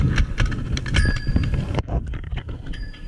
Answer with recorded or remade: recorded